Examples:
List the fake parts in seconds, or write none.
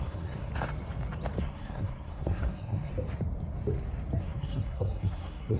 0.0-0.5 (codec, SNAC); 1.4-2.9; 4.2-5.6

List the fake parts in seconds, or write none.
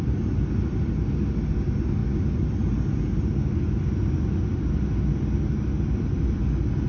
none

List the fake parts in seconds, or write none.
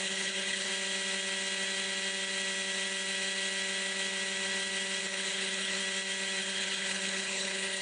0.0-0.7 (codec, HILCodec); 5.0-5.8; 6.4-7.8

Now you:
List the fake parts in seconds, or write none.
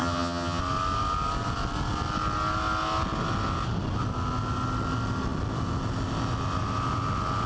0.0-0.6 (vocoder, HiFi-GAN)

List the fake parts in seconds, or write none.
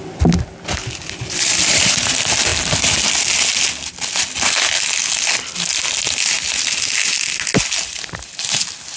1.5-2.1 (vocoder, BigVGAN v2)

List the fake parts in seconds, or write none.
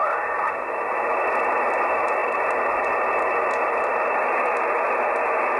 none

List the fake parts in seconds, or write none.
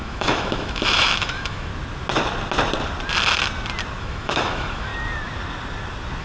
0.0-1.7 (autoencoder, DAC-VAE); 4.0-4.9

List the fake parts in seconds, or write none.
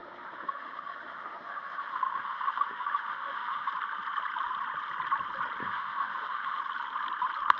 0.0-3.7 (autoencoder, DAC-VAE); 5.6-6.6